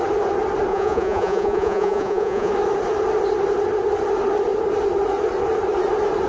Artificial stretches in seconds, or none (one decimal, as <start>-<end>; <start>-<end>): 0.7-2.5